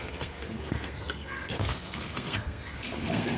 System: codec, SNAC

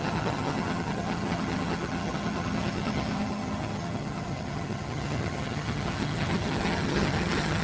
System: vocoder, HiFi-GAN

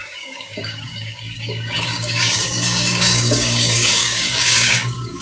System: codec, DAC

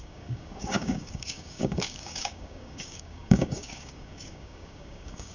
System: codec, DAC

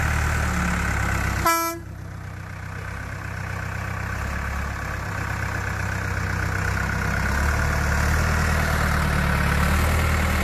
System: none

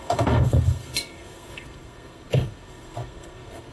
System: codec, SNAC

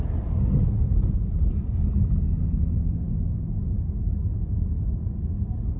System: none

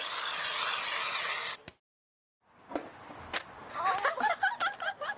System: none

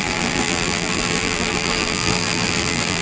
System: vocoder, BigVGAN v2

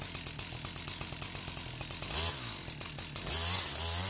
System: none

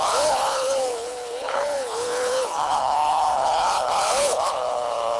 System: codec, HILCodec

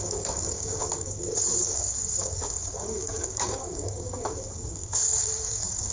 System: codec, DAC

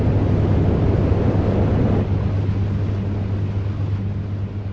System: none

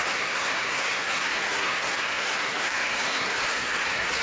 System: codec, SNAC